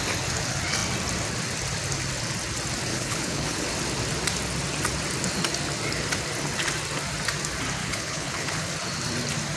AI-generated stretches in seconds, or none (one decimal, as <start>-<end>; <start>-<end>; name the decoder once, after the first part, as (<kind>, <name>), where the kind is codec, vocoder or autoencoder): 2.9-3.7 (codec, HILCodec); 7.8-8.7